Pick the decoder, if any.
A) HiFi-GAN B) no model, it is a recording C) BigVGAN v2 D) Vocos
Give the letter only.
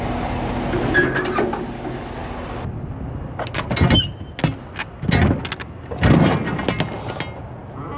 B